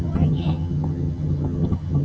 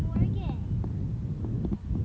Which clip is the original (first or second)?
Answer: second